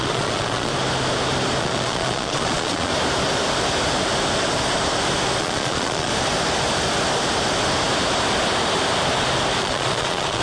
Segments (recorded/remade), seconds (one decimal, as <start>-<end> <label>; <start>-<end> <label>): 0.0-0.7 remade; 0.7-1.6 recorded; 1.6-2.9 remade; 2.9-5.4 recorded; 5.4-6.1 remade; 6.1-9.6 recorded; 9.6-10.4 remade